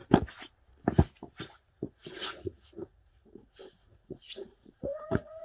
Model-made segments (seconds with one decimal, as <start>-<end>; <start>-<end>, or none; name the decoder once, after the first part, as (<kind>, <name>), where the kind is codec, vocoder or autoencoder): 1.4-5.4 (vocoder, Vocos)